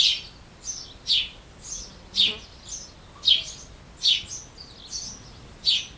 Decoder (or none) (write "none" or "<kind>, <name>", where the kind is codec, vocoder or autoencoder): none